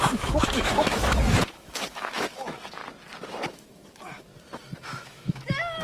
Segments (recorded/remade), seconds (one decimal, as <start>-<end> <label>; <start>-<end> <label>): 0.0-2.8 remade; 2.8-3.5 recorded; 3.5-4.3 remade; 4.3-4.8 recorded; 4.8-5.8 remade